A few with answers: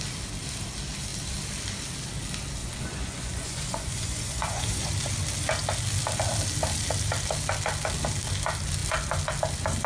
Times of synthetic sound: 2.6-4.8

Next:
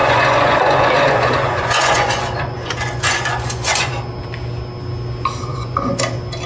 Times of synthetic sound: 0.0-3.9; 5.5-6.0